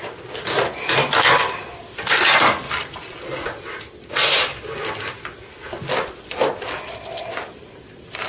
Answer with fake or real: real